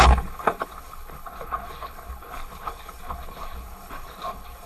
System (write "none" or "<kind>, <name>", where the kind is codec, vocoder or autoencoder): codec, HILCodec